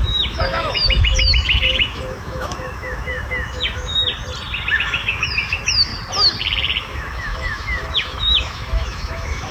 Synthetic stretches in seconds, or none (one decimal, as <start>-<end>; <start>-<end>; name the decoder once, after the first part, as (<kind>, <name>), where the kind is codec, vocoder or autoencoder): 0.0-4.0 (autoencoder, DAC-VAE); 4.7-5.9; 6.8-9.5